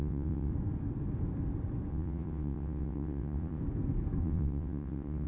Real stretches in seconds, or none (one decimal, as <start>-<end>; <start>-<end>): 0.5-1.9; 3.6-4.2